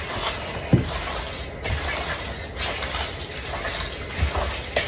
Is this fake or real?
real